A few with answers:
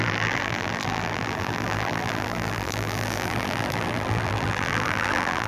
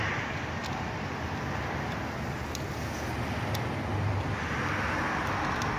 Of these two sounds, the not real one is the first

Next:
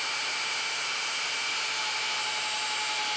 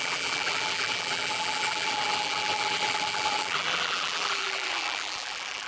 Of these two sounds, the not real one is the second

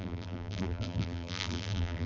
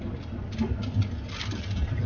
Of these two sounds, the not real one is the first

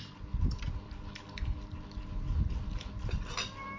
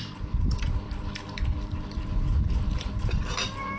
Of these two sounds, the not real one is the second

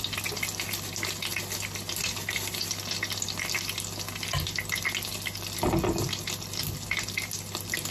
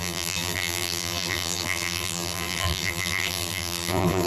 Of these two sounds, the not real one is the second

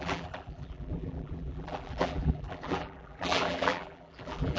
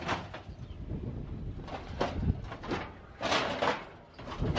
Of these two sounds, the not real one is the first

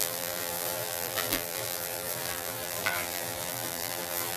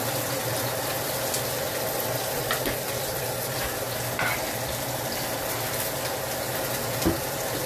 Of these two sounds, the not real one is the first